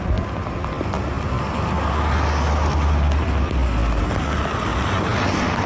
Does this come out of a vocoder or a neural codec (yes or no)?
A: no